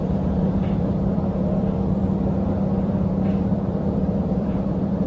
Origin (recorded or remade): remade